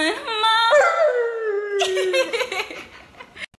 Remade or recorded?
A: recorded